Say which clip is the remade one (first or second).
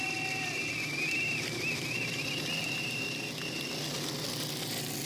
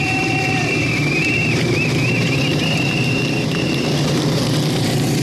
second